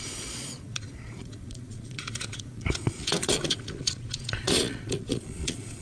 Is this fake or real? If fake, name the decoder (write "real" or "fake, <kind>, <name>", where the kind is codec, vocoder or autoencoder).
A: fake, vocoder, Vocos